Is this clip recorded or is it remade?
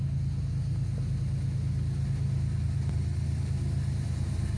recorded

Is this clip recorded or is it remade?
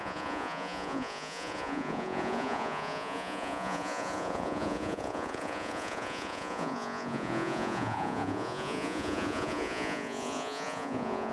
remade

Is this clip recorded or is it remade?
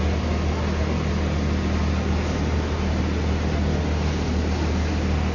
recorded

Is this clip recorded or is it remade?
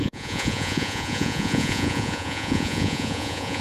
remade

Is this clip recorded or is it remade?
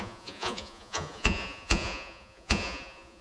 remade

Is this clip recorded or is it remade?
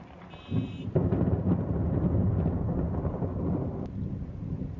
recorded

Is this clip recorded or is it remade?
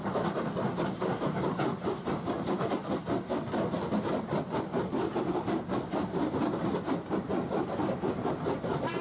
recorded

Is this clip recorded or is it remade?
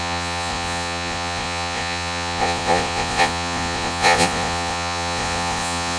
remade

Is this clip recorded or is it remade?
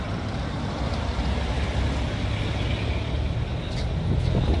recorded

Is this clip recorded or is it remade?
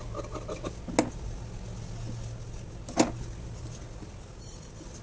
recorded